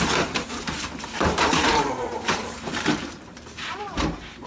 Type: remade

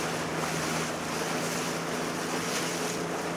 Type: recorded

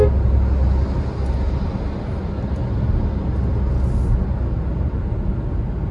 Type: recorded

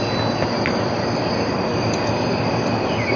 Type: recorded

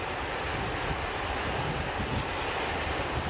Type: recorded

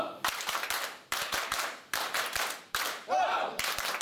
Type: remade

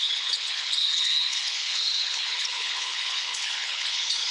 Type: remade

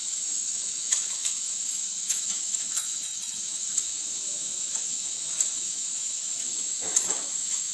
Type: remade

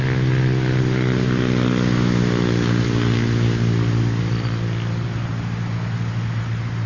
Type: recorded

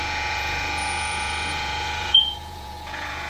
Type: remade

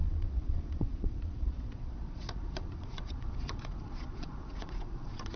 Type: remade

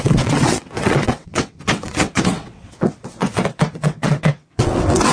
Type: remade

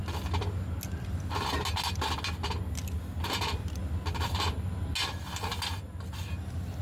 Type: recorded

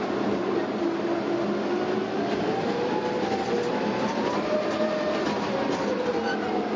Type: recorded